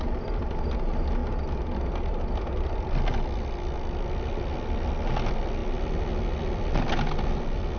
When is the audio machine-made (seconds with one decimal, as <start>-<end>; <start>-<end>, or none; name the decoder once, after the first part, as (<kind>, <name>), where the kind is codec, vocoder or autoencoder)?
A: none